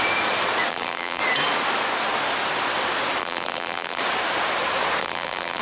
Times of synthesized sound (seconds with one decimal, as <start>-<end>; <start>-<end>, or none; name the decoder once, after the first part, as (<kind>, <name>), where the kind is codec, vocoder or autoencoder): 0.7-1.2 (vocoder, BigVGAN v2); 3.2-4.0; 5.0-5.6